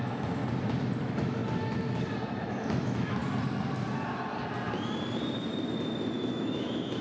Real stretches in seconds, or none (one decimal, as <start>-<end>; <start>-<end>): 0.4-1.0; 1.4-2.4; 3.2-6.1